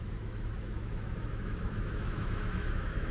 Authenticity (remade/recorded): remade